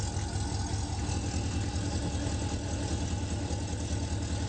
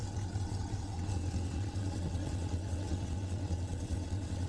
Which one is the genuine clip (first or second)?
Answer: first